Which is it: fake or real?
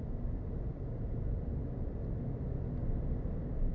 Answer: real